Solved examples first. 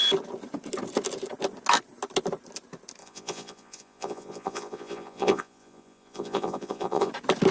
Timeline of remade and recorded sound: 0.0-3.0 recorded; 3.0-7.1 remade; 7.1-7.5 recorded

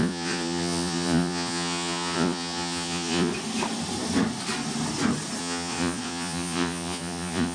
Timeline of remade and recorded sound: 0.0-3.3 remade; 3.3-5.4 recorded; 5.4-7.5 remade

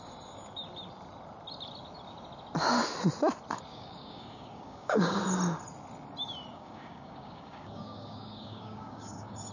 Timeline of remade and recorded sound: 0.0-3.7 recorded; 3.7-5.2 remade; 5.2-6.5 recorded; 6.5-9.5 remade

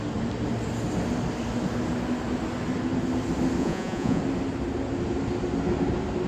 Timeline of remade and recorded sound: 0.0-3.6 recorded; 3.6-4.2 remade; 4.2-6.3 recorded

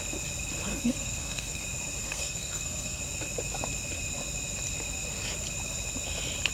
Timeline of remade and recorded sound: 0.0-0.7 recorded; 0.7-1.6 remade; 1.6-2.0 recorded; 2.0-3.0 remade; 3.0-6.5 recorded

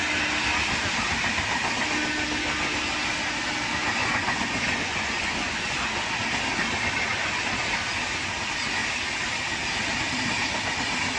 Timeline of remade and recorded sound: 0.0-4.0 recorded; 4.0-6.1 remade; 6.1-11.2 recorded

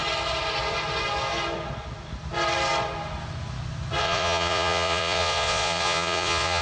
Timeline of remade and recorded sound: 0.0-4.0 recorded; 4.0-6.6 remade

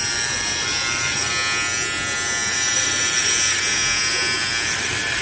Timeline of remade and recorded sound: 0.0-1.3 remade; 1.3-5.2 recorded